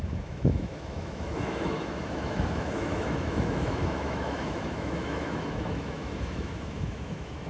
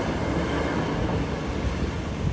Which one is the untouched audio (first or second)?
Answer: second